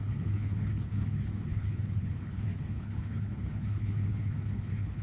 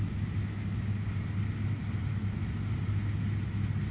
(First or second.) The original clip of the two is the second